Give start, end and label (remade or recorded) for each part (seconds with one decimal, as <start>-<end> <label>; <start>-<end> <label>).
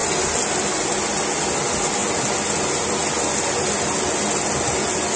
0.0-5.2 recorded